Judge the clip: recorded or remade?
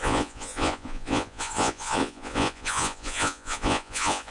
remade